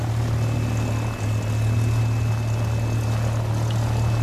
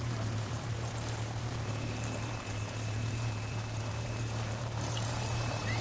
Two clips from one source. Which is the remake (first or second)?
second